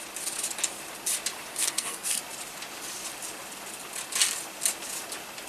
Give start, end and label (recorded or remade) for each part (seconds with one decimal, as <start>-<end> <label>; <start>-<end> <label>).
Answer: 0.0-1.5 recorded; 1.5-2.2 remade; 2.2-5.5 recorded

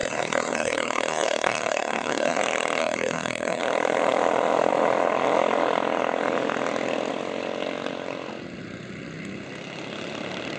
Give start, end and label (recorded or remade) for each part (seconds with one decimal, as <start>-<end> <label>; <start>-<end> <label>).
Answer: 0.0-2.4 remade; 2.4-2.8 recorded; 2.8-3.6 remade; 3.6-10.6 recorded

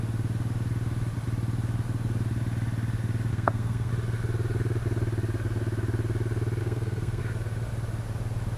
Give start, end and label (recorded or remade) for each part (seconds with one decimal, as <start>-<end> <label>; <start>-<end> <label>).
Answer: 0.0-3.3 recorded; 3.3-3.9 remade; 3.9-6.6 recorded; 6.6-7.2 remade; 7.2-8.6 recorded

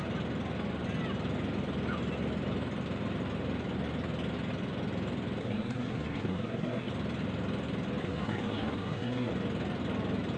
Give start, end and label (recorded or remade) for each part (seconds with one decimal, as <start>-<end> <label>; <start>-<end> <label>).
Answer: 0.0-5.4 recorded; 5.4-6.9 remade; 6.9-8.0 recorded; 8.0-9.3 remade; 9.3-10.4 recorded

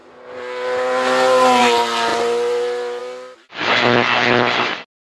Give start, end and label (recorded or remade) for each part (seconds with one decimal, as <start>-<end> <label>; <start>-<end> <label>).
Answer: 0.0-5.1 recorded

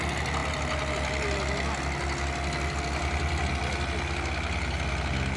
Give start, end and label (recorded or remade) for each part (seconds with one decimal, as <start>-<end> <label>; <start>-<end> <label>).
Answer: 0.0-5.4 recorded

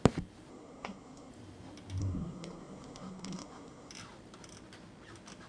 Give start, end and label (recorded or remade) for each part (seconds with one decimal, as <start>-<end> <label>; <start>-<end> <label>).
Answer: 0.0-0.5 recorded; 0.5-1.3 remade; 1.3-2.0 recorded; 2.0-3.9 remade; 3.9-5.5 recorded

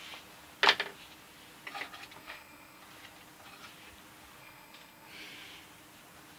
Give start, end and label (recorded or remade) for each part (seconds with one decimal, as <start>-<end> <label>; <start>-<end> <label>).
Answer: 0.0-2.2 recorded; 2.2-2.8 remade; 2.8-4.4 recorded; 4.4-5.1 remade; 5.1-6.4 recorded